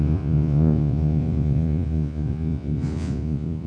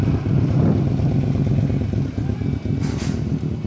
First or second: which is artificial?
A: first